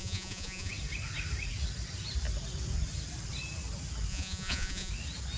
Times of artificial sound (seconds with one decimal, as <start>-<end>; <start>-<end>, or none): 0.0-0.7; 4.1-4.9